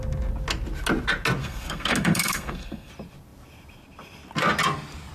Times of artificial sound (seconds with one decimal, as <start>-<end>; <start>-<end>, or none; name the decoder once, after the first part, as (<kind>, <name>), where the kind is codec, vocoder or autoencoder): 1.4-2.9 (codec, SNAC)